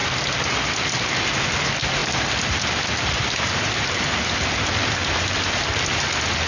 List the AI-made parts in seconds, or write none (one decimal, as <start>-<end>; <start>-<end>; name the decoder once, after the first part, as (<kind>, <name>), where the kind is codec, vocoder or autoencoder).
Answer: none